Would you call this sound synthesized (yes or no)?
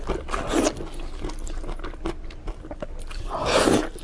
no